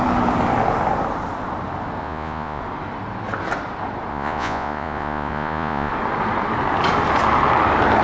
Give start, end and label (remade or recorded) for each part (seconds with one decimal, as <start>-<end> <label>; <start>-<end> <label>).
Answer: 0.0-2.0 recorded; 2.0-2.6 remade; 2.6-4.1 recorded; 4.1-5.9 remade; 5.9-8.0 recorded

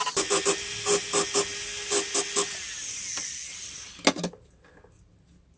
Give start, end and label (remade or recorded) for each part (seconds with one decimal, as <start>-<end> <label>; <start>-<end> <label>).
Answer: 0.0-5.6 recorded

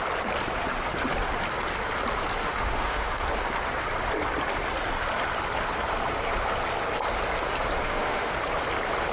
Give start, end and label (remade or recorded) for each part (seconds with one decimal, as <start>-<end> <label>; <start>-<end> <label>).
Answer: 0.0-2.4 recorded; 2.4-3.2 remade; 3.2-7.8 recorded; 7.8-8.3 remade; 8.3-9.1 recorded

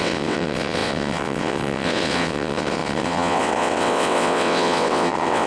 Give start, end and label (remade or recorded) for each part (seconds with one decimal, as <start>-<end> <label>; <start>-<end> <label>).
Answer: 0.0-5.5 remade